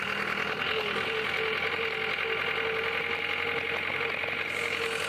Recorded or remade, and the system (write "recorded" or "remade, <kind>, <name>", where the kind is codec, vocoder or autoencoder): recorded